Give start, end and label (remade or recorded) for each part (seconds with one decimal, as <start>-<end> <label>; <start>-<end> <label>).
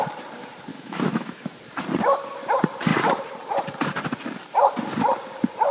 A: 0.0-0.7 recorded; 0.7-1.5 remade; 1.5-5.7 recorded